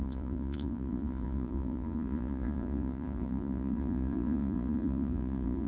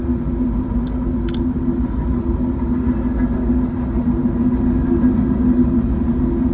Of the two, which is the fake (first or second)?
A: first